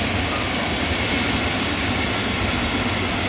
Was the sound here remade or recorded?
recorded